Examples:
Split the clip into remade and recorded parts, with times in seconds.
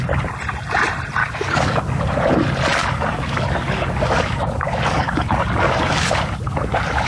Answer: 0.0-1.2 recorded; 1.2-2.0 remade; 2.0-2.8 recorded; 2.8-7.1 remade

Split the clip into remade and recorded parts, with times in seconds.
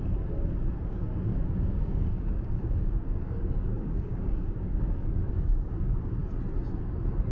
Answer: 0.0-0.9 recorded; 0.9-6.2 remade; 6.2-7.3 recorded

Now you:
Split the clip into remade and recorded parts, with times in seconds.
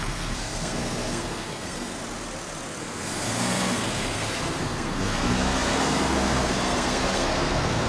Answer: 0.0-2.0 remade; 2.0-2.8 recorded; 2.8-7.9 remade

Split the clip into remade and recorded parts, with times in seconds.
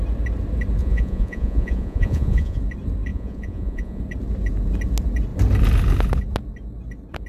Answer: 0.0-0.8 recorded; 0.8-2.6 remade; 2.6-3.1 recorded; 3.1-4.0 remade; 4.0-7.3 recorded